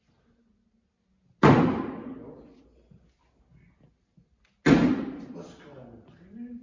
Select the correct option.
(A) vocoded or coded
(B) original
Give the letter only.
B